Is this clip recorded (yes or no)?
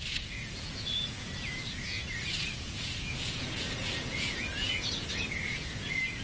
no